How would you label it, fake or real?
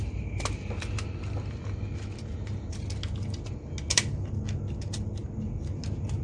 real